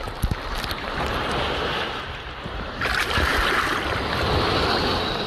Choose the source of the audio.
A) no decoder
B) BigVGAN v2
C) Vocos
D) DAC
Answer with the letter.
A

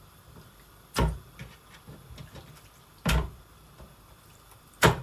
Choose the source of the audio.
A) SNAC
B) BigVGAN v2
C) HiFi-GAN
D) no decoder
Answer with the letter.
B